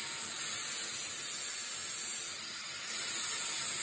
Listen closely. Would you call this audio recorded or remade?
recorded